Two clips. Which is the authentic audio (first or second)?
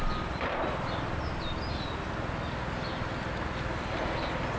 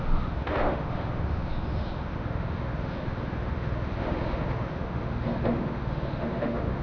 first